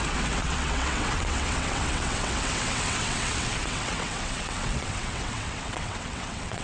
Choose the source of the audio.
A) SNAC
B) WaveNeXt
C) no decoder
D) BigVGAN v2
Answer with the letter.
B